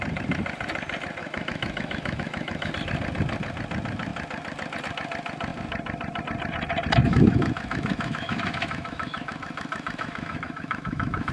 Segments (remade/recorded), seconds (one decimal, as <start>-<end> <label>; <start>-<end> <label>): 0.0-1.2 recorded; 1.2-2.7 remade; 2.7-7.0 recorded; 7.0-11.3 remade